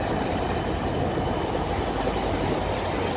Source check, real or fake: real